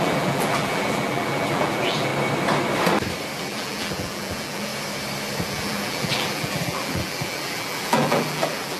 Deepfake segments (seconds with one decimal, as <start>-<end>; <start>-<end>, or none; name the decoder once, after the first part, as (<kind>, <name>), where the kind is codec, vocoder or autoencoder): 0.0-2.1 (vocoder, BigVGAN v2); 3.4-4.7; 5.5-8.8